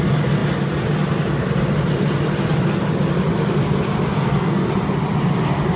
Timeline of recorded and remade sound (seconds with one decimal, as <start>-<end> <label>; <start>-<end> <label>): 0.0-4.1 recorded; 4.1-4.7 remade; 4.7-5.8 recorded